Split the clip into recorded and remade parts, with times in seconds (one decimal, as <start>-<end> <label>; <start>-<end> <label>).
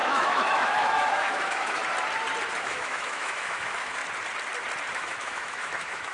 0.0-1.8 remade; 1.8-2.6 recorded; 2.6-4.0 remade; 4.0-4.9 recorded; 4.9-6.1 remade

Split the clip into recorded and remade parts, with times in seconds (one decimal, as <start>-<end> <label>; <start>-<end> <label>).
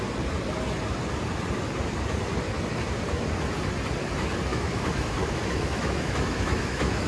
0.0-4.5 recorded; 4.5-7.1 remade